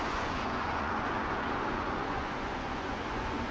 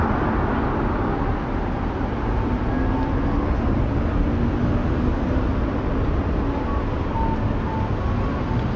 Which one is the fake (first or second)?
first